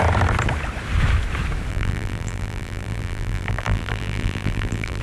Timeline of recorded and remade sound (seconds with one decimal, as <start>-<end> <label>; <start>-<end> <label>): 0.0-1.7 recorded; 1.7-5.0 remade